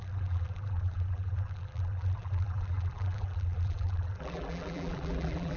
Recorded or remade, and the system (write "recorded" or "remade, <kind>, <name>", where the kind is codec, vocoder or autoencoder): remade, vocoder, BigVGAN v2